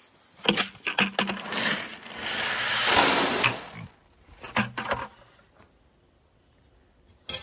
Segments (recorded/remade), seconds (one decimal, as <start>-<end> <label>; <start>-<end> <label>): 0.0-7.4 recorded